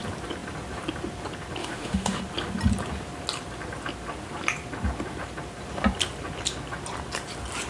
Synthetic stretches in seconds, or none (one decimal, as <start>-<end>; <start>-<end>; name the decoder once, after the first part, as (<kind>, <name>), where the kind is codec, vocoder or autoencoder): 1.6-2.2 (autoencoder, DAC-VAE)